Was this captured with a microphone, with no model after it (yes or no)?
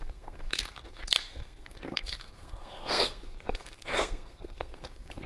no